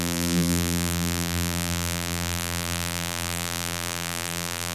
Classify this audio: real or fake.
fake